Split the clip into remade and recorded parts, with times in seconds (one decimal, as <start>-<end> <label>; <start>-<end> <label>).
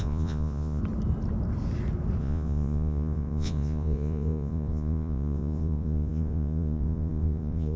0.0-0.8 remade; 0.8-2.2 recorded; 2.2-7.8 remade